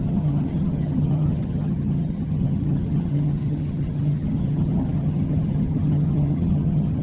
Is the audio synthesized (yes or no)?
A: yes